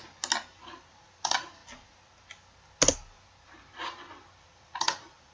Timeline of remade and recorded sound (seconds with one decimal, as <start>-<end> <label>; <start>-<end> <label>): 0.0-0.9 recorded; 0.9-1.6 remade; 1.6-4.4 recorded; 4.4-5.3 remade

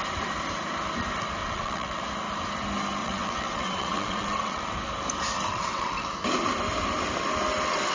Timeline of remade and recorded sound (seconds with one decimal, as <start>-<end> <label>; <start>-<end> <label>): 0.0-1.4 recorded; 1.4-2.0 remade; 2.0-3.0 recorded; 3.0-4.6 remade; 4.6-5.5 recorded; 5.5-6.1 remade; 6.1-7.9 recorded

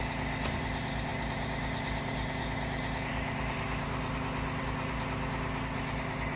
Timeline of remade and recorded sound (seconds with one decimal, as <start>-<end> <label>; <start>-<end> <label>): 0.0-6.4 recorded

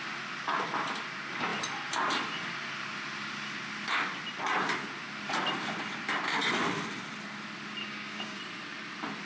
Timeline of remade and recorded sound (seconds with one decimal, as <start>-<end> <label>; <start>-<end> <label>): 0.0-7.8 recorded; 7.8-8.4 remade; 8.4-9.3 recorded

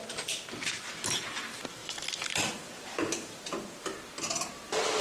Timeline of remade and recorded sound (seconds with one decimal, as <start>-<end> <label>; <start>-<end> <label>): 0.0-1.4 recorded; 1.4-5.0 remade